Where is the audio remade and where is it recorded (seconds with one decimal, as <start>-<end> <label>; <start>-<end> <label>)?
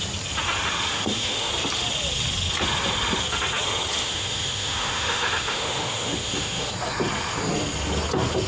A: 0.0-0.9 recorded; 0.9-1.5 remade; 1.5-4.0 recorded; 4.0-6.7 remade; 6.7-8.5 recorded